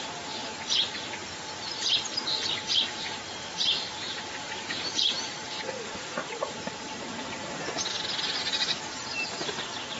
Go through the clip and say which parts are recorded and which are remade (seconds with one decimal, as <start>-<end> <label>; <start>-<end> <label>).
0.0-1.2 recorded; 1.2-5.7 remade; 5.7-6.2 recorded; 6.2-7.0 remade; 7.0-10.0 recorded